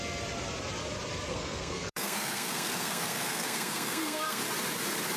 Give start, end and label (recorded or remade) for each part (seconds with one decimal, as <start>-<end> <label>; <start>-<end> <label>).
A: 0.0-1.3 recorded; 1.3-4.4 remade; 4.4-5.2 recorded